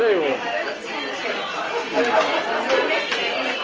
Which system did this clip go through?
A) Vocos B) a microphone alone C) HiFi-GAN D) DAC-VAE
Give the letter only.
B